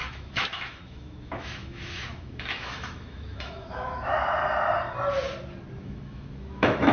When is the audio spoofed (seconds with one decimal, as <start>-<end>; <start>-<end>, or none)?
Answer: 0.0-4.4; 5.8-6.9